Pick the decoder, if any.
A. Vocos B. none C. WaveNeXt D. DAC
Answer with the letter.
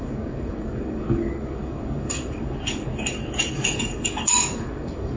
D